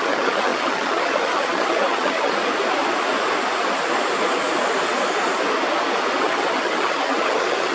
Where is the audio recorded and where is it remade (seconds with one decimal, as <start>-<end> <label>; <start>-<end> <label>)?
0.0-2.4 remade; 2.4-6.2 recorded; 6.2-7.7 remade